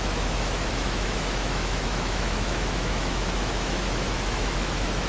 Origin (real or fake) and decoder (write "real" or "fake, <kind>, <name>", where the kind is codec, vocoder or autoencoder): fake, autoencoder, DAC-VAE